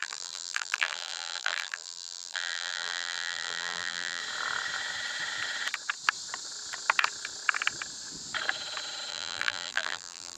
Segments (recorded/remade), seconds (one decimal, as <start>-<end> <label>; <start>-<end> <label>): 0.0-4.2 remade; 4.2-9.1 recorded; 9.1-10.4 remade